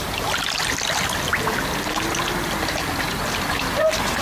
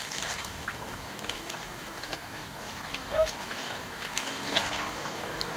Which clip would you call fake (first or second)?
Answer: second